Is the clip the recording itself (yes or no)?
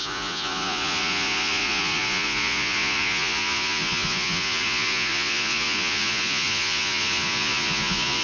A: no